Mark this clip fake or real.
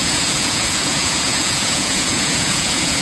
fake